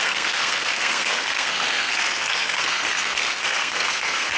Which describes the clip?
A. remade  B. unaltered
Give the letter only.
A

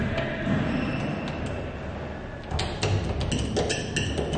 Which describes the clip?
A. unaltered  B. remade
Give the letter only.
A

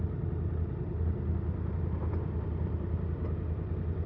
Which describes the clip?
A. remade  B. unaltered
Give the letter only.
B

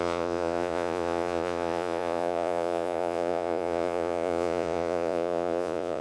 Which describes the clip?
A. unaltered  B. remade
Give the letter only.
B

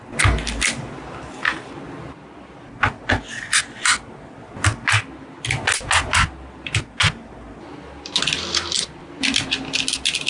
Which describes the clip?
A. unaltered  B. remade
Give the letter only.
A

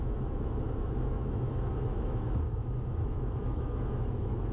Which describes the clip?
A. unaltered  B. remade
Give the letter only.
B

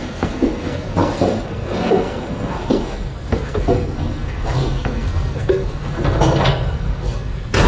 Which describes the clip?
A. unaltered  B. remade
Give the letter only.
B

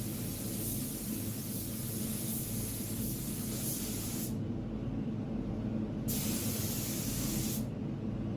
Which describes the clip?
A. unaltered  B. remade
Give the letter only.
A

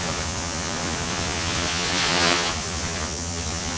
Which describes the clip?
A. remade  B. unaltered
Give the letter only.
A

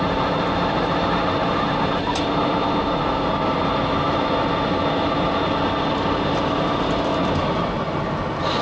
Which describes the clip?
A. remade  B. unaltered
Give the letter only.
B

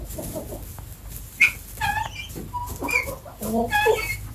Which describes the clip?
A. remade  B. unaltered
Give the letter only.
B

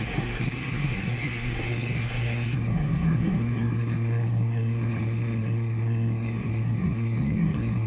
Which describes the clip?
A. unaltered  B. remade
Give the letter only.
B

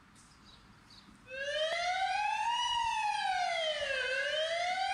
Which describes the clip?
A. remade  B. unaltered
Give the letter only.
B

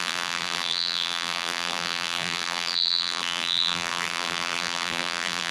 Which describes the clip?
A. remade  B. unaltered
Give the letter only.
A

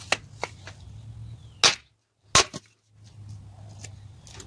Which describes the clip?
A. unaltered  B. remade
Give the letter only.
A